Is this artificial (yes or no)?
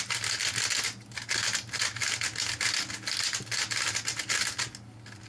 no